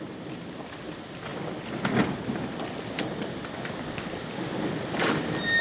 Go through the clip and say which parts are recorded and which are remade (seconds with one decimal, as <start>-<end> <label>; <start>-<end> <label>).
0.0-5.6 recorded